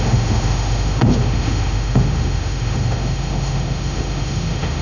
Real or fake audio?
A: fake